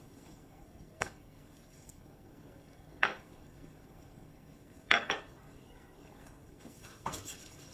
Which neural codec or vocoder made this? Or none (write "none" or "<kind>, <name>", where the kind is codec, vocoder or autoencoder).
codec, SNAC